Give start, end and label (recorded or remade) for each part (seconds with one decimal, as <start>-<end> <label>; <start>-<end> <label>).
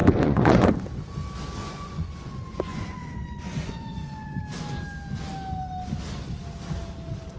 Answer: 0.0-0.7 remade; 0.7-1.6 recorded; 1.6-4.4 remade; 4.4-7.4 recorded